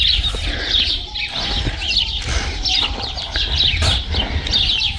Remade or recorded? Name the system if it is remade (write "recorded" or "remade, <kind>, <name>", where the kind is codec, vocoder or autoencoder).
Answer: recorded